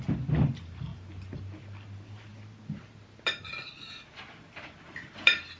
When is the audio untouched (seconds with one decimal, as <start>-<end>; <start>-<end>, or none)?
0.9-1.7; 2.3-4.4